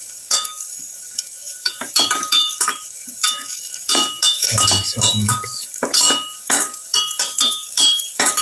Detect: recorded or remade remade